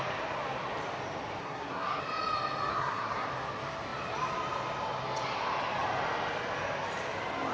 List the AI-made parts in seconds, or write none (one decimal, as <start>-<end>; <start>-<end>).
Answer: 1.4-2.0; 2.7-3.3

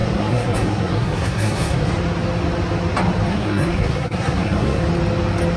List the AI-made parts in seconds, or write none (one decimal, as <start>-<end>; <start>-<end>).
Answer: 0.0-1.9; 3.3-4.8